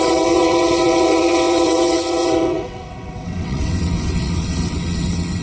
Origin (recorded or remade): remade